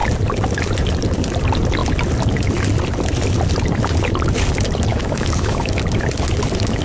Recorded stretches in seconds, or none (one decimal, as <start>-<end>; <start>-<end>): 0.0-4.9; 5.8-6.8